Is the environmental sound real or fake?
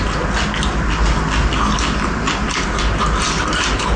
real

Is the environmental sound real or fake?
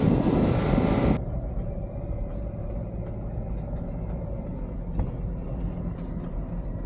real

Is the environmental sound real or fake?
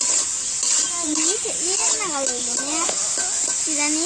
real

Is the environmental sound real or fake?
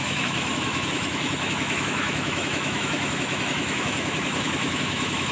fake